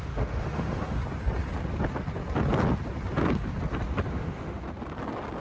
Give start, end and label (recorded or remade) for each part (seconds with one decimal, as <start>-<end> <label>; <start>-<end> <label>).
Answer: 0.0-1.0 remade; 1.0-4.1 recorded; 4.1-4.6 remade; 4.6-5.4 recorded

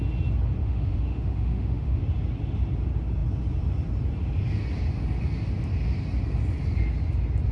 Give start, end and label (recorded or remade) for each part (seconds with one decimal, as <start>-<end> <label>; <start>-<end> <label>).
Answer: 0.0-0.6 recorded; 0.6-2.0 remade; 2.0-7.5 recorded

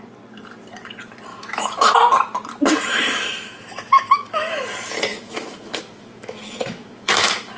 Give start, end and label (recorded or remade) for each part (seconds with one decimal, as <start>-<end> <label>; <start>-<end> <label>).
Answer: 0.0-1.3 recorded; 1.3-1.9 remade; 1.9-2.9 recorded; 2.9-4.6 remade; 4.6-5.1 recorded; 5.1-7.6 remade